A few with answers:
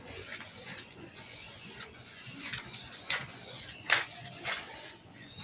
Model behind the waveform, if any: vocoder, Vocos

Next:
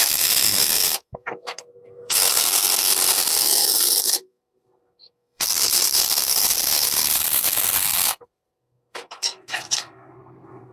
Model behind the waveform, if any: codec, SNAC